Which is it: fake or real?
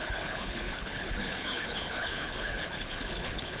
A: fake